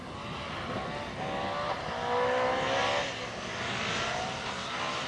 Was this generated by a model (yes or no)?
no